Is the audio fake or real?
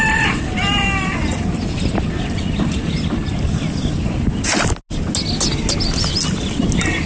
real